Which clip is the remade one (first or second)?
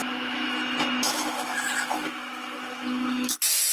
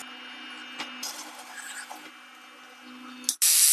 first